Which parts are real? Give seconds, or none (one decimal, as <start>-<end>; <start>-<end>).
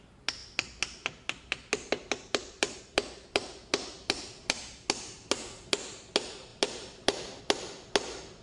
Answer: 0.0-8.4